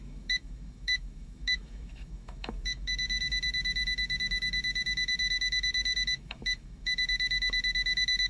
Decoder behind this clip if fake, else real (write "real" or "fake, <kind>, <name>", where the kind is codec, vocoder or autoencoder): fake, autoencoder, DAC-VAE